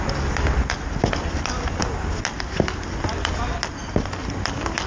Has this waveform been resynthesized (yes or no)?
no